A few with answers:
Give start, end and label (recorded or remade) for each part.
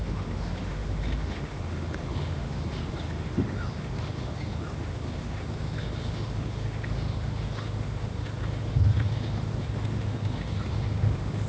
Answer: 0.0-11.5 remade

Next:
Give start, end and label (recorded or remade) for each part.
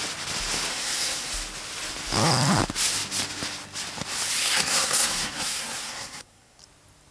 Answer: 0.0-0.7 recorded; 0.7-1.3 remade; 1.3-4.4 recorded; 4.4-6.6 remade; 6.6-7.1 recorded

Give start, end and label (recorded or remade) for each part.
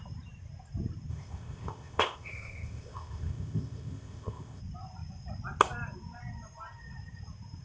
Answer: 0.0-1.1 recorded; 1.1-4.6 remade; 4.6-7.6 recorded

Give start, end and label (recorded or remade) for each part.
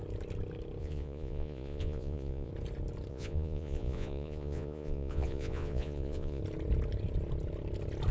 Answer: 0.0-0.8 recorded; 0.8-2.5 remade; 2.5-3.1 recorded; 3.1-6.4 remade; 6.4-8.1 recorded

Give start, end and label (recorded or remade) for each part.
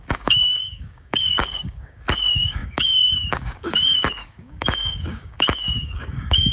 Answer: 0.0-6.5 remade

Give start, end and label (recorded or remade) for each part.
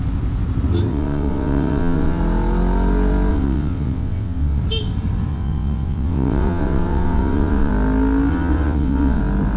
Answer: 0.0-0.9 recorded; 0.9-2.2 remade; 2.2-3.3 recorded; 3.3-4.6 remade; 4.6-5.3 recorded; 5.3-7.7 remade; 7.7-8.3 recorded; 8.3-9.2 remade; 9.2-9.6 recorded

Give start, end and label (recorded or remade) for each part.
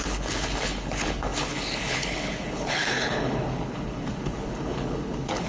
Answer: 0.0-5.5 remade